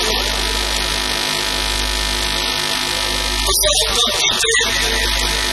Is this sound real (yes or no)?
yes